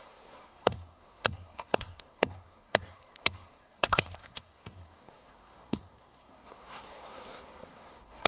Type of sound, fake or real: fake